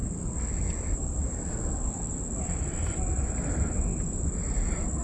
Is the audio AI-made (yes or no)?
no